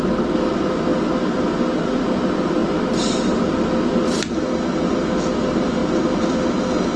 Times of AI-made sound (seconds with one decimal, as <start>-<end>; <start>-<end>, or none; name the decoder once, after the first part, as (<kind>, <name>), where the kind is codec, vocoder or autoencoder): none